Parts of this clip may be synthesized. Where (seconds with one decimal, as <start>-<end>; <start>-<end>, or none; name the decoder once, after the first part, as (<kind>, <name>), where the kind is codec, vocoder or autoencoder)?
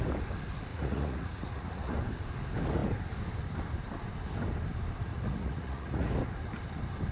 0.7-1.9 (vocoder, Vocos); 5.1-6.1